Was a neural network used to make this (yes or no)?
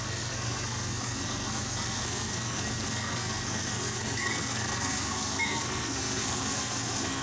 yes